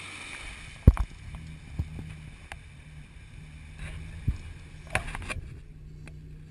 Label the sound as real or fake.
real